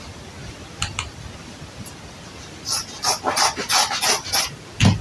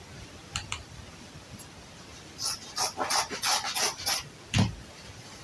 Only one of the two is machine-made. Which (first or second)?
second